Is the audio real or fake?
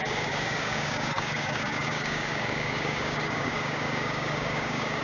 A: fake